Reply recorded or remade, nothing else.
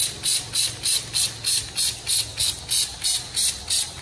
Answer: recorded